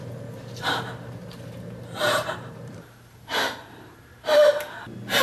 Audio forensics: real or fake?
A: fake